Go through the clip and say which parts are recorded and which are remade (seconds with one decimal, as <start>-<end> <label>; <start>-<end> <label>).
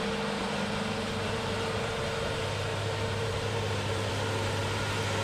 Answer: 0.0-0.4 recorded; 0.4-1.9 remade; 1.9-2.7 recorded; 2.7-4.1 remade; 4.1-5.2 recorded